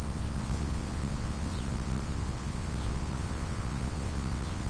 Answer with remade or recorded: remade